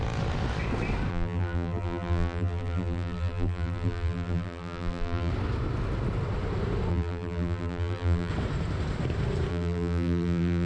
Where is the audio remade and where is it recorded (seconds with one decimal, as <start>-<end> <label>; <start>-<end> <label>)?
0.0-1.1 recorded; 1.1-5.3 remade; 5.3-6.9 recorded; 6.9-8.3 remade; 8.3-9.5 recorded; 9.5-10.7 remade